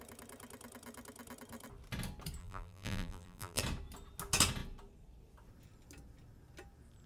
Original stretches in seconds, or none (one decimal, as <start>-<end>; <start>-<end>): 0.0-2.4; 3.6-7.1